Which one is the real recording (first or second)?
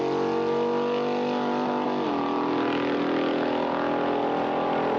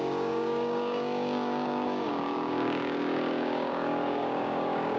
first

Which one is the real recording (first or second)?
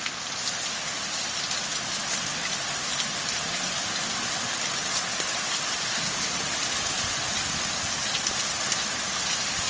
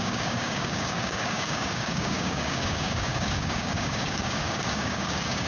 first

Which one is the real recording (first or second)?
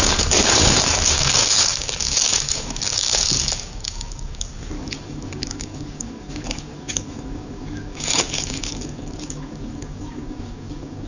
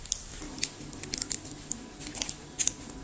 second